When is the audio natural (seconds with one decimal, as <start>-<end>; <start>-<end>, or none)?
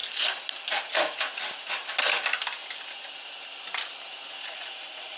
0.0-0.7; 1.3-4.4